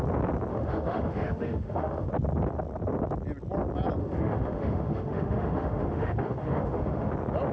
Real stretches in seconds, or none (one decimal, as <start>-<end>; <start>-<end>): 0.0-0.5; 2.1-4.0; 7.1-7.5